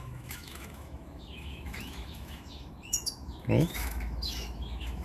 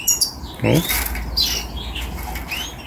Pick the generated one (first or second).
first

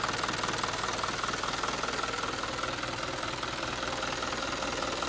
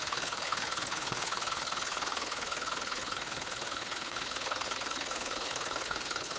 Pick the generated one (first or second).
second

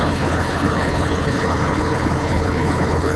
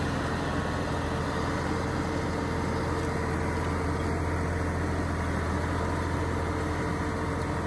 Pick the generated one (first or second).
first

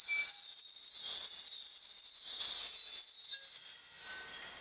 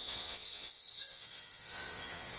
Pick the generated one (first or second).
second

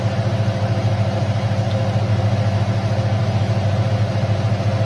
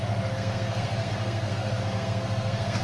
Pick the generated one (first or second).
second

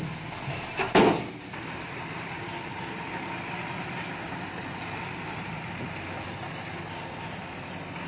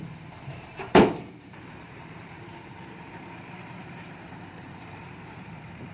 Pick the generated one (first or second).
second